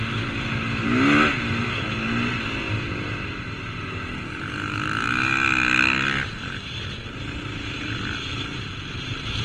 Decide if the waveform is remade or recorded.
recorded